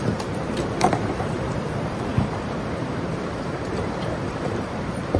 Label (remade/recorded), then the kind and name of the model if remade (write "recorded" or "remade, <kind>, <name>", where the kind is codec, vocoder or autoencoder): remade, vocoder, BigVGAN v2